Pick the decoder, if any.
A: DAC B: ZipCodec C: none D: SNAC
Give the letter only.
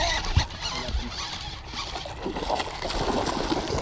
C